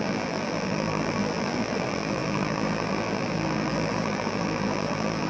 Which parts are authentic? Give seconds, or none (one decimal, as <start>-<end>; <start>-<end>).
none